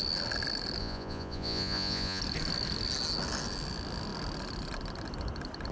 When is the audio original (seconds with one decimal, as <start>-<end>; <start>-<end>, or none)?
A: 0.0-0.8; 2.2-5.7